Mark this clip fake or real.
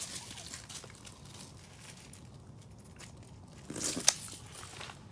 real